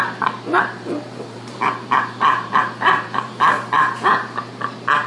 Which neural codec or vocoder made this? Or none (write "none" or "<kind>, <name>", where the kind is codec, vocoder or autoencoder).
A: vocoder, BigVGAN v2